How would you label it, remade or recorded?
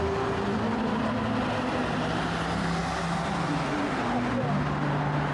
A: recorded